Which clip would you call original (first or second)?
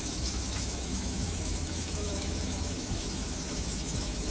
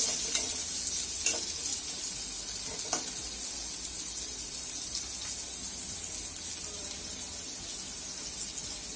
second